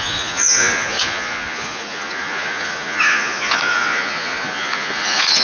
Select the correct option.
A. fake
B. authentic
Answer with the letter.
A